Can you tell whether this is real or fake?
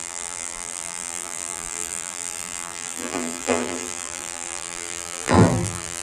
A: fake